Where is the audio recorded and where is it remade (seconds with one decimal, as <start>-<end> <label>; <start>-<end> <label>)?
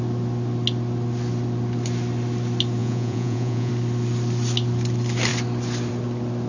0.0-2.8 recorded; 2.8-3.7 remade; 3.7-6.5 recorded